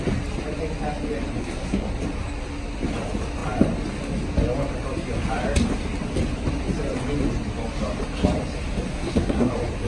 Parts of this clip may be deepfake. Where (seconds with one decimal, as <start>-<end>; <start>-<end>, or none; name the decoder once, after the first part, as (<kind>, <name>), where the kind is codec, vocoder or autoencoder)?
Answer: 1.4-1.9 (codec, SNAC); 8.9-9.5